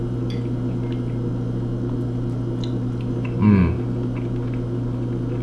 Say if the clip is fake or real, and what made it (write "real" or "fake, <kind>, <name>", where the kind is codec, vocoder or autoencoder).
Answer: real